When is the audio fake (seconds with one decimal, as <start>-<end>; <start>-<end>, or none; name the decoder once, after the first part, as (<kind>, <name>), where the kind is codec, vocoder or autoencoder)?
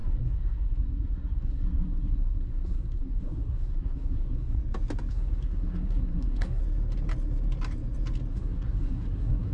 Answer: 0.0-4.6 (codec, SNAC); 5.1-6.6; 8.3-9.5